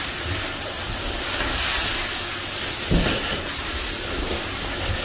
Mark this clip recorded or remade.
recorded